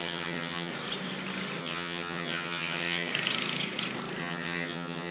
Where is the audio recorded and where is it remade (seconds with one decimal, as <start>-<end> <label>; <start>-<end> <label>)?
0.0-0.7 remade; 0.7-1.6 recorded; 1.6-3.1 remade; 3.1-4.2 recorded; 4.2-5.1 remade